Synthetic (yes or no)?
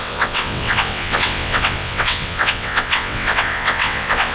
yes